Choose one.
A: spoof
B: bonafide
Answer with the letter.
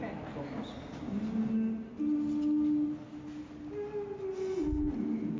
B